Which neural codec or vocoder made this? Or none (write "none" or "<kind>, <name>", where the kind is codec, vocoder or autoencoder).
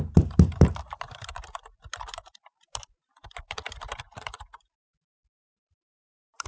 vocoder, BigVGAN v2